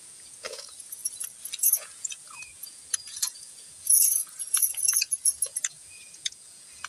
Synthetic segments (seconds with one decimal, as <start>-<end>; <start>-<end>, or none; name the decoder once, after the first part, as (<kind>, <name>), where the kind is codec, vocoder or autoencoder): 0.0-1.0 (vocoder, Vocos); 1.6-6.9